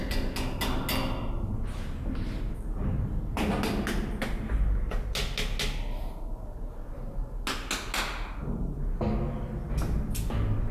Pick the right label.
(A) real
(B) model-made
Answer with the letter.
A